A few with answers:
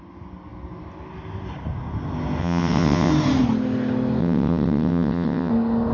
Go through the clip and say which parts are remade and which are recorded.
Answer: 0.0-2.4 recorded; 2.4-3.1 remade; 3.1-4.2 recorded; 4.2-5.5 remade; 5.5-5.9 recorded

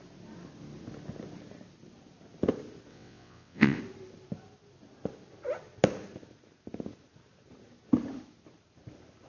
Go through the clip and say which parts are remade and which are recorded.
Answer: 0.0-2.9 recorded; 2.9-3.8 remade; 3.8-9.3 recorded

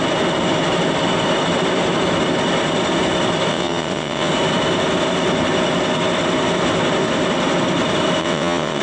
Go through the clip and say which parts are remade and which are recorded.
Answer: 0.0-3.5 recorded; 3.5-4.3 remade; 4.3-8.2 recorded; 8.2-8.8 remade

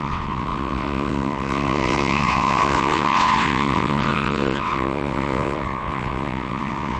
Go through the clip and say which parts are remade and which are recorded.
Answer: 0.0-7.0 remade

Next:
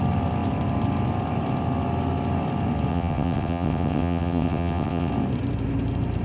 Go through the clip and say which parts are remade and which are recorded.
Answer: 0.0-2.9 recorded; 2.9-5.1 remade; 5.1-6.2 recorded

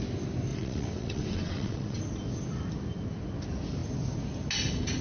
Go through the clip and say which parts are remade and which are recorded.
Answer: 0.0-0.5 recorded; 0.5-2.0 remade; 2.0-5.0 recorded

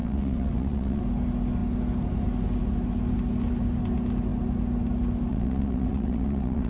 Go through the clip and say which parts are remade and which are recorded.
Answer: 0.0-1.0 remade; 1.0-5.3 recorded; 5.3-6.7 remade